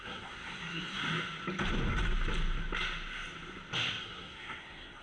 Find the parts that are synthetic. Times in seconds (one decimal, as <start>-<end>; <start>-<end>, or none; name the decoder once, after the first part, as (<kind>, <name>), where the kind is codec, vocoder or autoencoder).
0.0-1.0 (codec, SNAC); 4.0-5.0

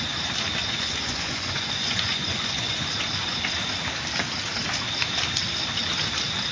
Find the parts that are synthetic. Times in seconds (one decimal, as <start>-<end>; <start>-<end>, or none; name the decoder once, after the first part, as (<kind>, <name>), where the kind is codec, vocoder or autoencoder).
0.6-3.4 (vocoder, Vocos)

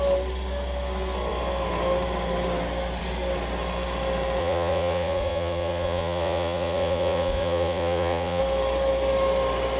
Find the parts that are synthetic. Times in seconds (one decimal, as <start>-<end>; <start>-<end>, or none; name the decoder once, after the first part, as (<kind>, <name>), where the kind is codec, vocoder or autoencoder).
4.4-8.4 (vocoder, Vocos)

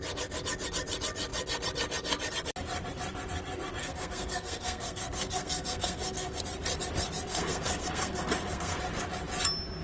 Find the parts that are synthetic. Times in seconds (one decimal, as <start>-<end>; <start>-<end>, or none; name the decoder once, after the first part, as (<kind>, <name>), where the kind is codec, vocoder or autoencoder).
3.8-6.4 (codec, SNAC); 7.3-8.8

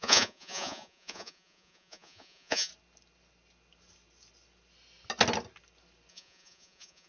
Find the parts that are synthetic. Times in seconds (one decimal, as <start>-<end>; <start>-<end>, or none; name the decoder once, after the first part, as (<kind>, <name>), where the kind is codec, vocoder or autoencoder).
0.0-2.7 (vocoder, Vocos); 6.1-7.1

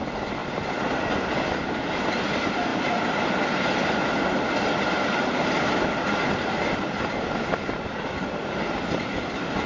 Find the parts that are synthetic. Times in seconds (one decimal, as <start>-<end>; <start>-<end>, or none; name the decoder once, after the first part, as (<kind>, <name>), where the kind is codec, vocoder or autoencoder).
0.4-1.0 (vocoder, BigVGAN v2); 2.7-3.2

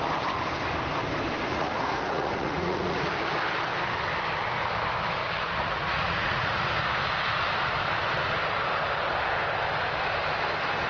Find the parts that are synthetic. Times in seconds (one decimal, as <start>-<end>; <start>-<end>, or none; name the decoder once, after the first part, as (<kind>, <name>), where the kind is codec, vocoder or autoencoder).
1.5-3.1 (vocoder, Vocos); 5.2-6.7

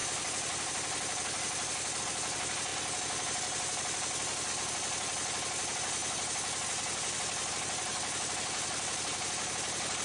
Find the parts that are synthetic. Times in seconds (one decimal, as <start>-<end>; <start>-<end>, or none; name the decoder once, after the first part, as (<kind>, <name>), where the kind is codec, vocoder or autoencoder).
0.0-2.0 (vocoder, BigVGAN v2)